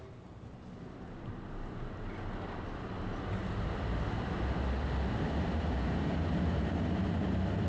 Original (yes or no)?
yes